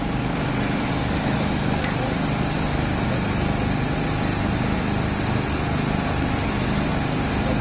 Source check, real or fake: real